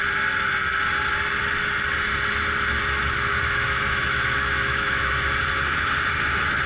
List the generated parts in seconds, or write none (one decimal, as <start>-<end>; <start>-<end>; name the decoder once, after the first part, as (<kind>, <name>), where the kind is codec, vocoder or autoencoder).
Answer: 3.3-5.1 (autoencoder, DAC-VAE)